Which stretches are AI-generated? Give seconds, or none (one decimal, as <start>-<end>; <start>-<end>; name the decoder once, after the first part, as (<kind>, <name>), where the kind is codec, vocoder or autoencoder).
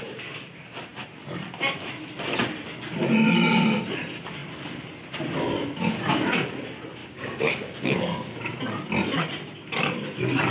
7.0-8.6 (codec, DAC)